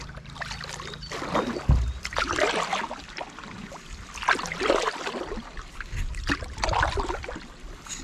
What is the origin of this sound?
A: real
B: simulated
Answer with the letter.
A